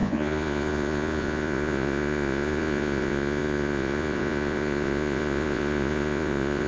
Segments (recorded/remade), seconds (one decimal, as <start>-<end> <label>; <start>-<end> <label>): 0.0-6.7 remade

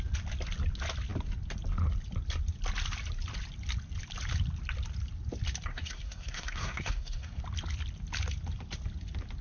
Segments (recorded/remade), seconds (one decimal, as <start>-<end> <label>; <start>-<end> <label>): 0.0-5.7 recorded; 5.7-7.4 remade; 7.4-9.4 recorded

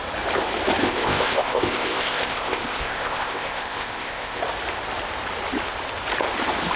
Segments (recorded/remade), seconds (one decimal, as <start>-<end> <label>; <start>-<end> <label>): 0.0-0.8 recorded; 0.8-4.4 remade; 4.4-6.8 recorded

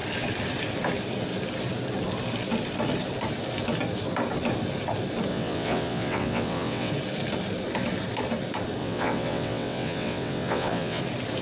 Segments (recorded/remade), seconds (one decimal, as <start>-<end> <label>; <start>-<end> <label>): 0.0-5.3 recorded; 5.3-6.9 remade; 6.9-8.8 recorded; 8.8-11.0 remade; 11.0-11.4 recorded

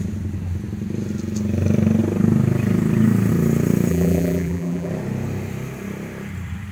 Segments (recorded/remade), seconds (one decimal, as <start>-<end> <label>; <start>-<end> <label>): 0.0-3.9 recorded; 3.9-4.9 remade; 4.9-6.7 recorded

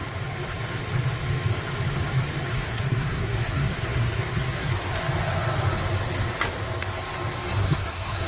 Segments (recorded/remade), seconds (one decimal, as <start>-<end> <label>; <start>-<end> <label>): 0.0-2.5 recorded; 2.5-4.7 remade; 4.7-7.6 recorded; 7.6-8.3 remade

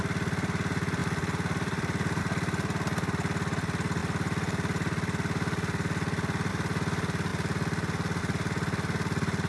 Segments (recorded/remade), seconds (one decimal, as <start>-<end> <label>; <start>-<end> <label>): 0.0-1.0 recorded; 1.0-2.2 remade; 2.2-9.5 recorded